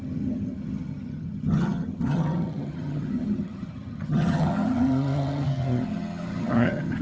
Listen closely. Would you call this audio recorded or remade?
remade